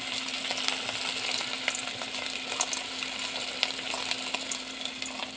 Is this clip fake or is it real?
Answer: real